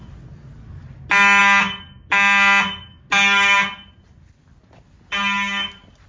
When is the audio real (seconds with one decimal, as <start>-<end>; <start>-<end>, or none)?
0.0-6.1